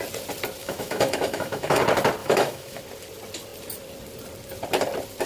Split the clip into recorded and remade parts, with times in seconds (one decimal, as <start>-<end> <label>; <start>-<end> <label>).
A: 0.0-0.6 recorded; 0.6-1.8 remade; 1.8-2.2 recorded; 2.2-2.8 remade; 2.8-5.3 recorded